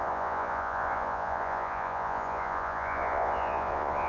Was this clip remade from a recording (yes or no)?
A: yes